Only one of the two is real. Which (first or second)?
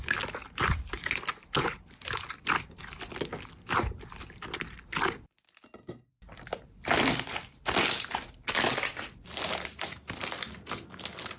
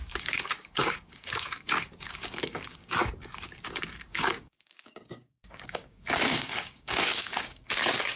first